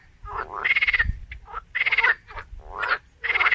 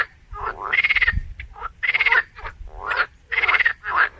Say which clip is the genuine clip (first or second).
first